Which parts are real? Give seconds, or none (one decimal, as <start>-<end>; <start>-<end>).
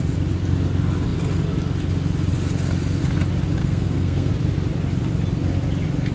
0.0-3.6; 4.3-6.1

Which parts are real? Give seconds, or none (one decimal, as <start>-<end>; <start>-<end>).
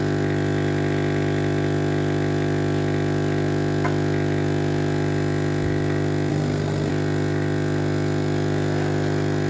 0.0-6.3; 6.9-9.5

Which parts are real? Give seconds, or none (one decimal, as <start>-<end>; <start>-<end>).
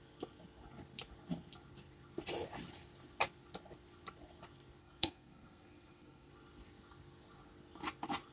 0.0-4.8; 6.3-8.3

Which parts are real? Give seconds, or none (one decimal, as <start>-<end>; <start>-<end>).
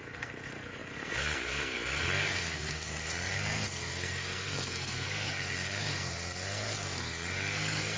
none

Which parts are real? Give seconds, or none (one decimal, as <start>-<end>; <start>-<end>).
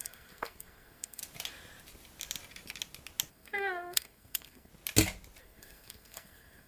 1.2-3.3; 4.7-5.4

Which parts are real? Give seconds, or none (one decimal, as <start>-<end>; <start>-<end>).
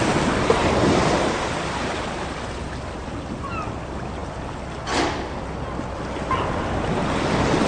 0.0-7.7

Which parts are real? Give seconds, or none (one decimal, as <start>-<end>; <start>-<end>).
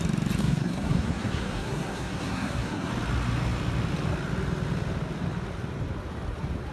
0.0-0.4; 2.9-6.7